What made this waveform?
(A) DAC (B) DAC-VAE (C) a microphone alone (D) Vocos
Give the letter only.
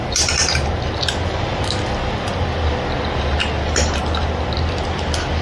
C